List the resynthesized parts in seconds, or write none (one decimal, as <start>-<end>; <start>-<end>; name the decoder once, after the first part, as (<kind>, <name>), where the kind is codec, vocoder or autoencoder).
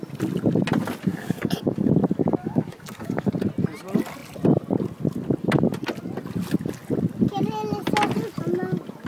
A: 1.1-1.9 (codec, DAC); 2.4-3.3